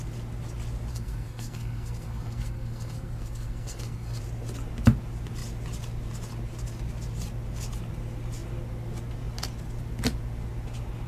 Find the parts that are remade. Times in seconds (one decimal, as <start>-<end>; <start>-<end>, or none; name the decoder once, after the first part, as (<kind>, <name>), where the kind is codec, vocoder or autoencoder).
0.9-4.2 (codec, SNAC)